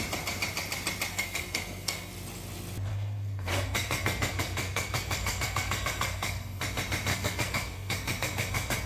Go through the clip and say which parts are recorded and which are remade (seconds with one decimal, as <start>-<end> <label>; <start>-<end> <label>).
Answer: 0.0-1.1 recorded; 1.1-2.1 remade; 2.1-2.9 recorded; 2.9-6.6 remade; 6.6-7.1 recorded; 7.1-8.9 remade